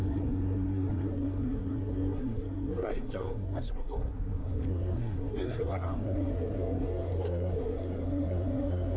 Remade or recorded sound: remade